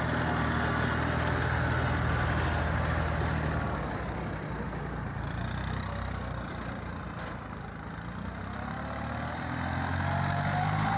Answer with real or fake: real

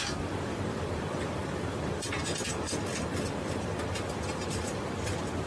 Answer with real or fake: fake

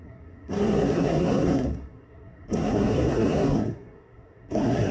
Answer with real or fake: fake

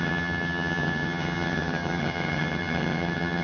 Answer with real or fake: fake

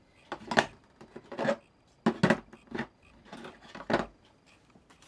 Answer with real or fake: real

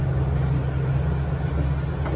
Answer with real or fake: real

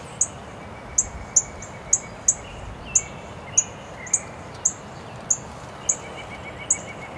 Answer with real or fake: real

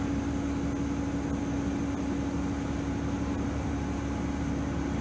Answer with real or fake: real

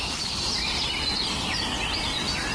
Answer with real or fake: real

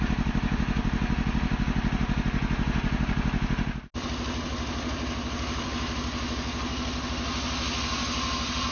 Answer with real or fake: real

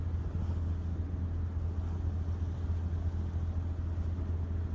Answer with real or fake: real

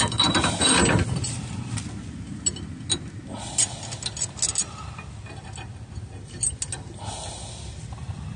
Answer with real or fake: real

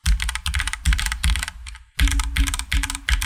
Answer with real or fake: real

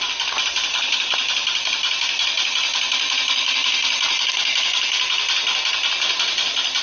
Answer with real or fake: real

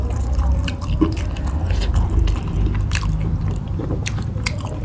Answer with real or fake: fake